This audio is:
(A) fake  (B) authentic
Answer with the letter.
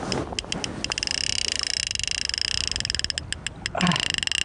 B